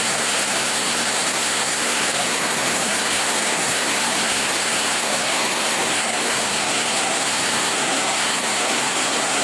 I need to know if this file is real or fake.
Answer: fake